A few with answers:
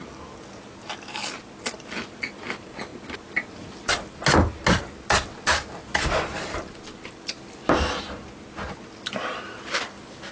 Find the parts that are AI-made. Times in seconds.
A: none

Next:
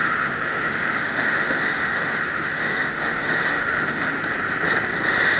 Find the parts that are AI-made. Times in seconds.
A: 0.0-4.2 (autoencoder, DAC-VAE)

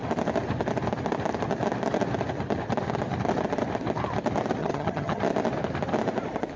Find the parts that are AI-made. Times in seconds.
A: 4.6-5.2 (vocoder, HiFi-GAN)

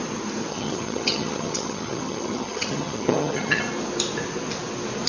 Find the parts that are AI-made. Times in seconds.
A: 0.5-3.6 (vocoder, HiFi-GAN)

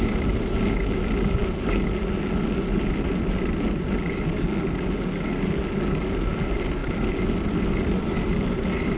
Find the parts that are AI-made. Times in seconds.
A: none

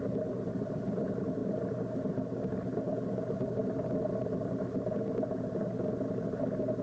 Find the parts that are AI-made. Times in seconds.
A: 3.6-4.6 (vocoder, BigVGAN v2)

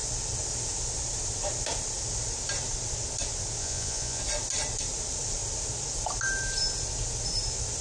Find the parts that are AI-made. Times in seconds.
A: 3.6-4.2 (vocoder, Vocos)

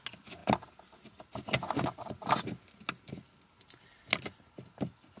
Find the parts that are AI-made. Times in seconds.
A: none